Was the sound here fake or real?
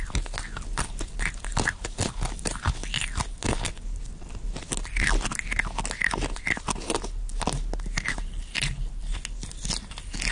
real